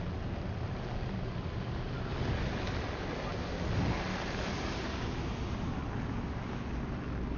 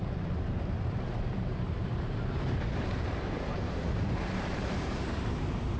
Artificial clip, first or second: second